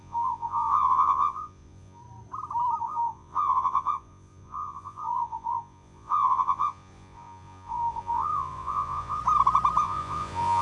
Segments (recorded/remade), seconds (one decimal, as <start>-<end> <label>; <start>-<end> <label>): 0.0-2.0 remade; 2.0-2.8 recorded; 2.8-9.2 remade; 9.2-9.8 recorded; 9.8-10.6 remade